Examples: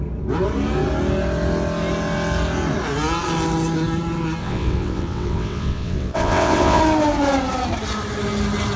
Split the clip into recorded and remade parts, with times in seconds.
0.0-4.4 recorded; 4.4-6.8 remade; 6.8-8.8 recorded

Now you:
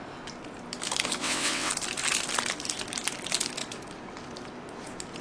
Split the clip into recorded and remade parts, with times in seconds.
0.0-1.2 recorded; 1.2-1.7 remade; 1.7-5.2 recorded

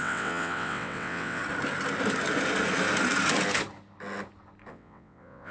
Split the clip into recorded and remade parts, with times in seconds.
0.0-1.4 remade; 1.4-4.7 recorded; 4.7-5.5 remade